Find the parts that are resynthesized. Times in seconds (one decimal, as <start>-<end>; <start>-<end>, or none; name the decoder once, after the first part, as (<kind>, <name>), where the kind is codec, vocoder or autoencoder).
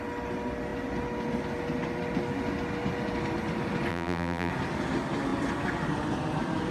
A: 3.9-4.5 (vocoder, BigVGAN v2)